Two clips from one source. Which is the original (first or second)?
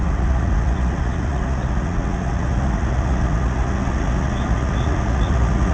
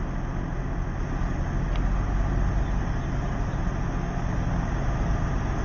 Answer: second